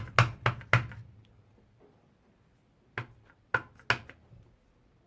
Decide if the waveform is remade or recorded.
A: recorded